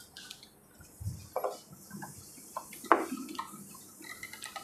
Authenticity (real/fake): real